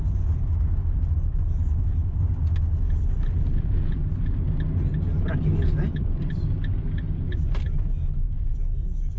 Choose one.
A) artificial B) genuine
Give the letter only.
B